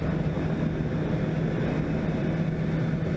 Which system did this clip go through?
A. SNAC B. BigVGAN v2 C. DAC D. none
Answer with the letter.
D